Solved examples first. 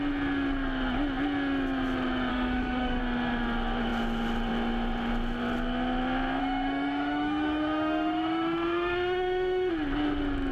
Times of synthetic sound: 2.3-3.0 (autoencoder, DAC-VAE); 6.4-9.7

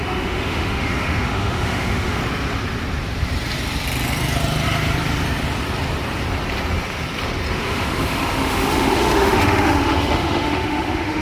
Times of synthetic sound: 0.0-2.2 (autoencoder, DAC-VAE); 7.5-11.2

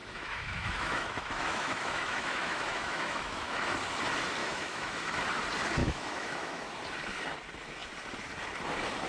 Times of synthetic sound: 0.0-3.7 (autoencoder, DAC-VAE); 4.4-5.2; 5.8-6.6

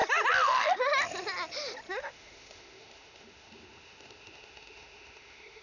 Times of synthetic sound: 1.9-5.6 (autoencoder, DAC-VAE)

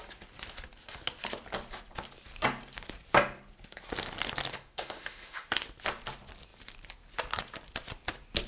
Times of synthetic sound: 4.5-5.5 (autoencoder, DAC-VAE)

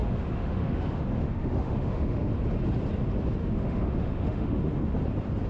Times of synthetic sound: 0.0-2.3 (autoencoder, DAC-VAE); 3.4-4.8